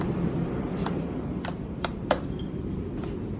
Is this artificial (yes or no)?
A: yes